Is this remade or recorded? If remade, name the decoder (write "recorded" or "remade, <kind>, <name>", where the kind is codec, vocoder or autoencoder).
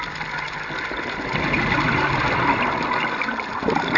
recorded